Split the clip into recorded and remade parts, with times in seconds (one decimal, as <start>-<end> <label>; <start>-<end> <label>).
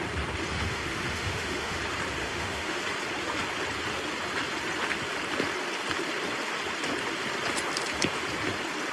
0.0-0.5 recorded; 0.5-1.8 remade; 1.8-2.2 recorded; 2.2-2.8 remade; 2.8-8.9 recorded